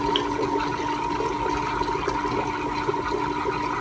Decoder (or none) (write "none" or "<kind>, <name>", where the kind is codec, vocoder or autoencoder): none